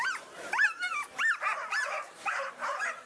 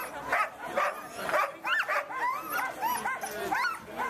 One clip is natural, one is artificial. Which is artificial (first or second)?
first